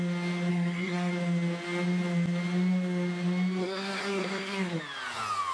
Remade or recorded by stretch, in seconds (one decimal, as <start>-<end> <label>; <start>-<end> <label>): 0.0-0.5 recorded; 0.5-1.1 remade; 1.1-3.6 recorded; 3.6-4.8 remade; 4.8-5.5 recorded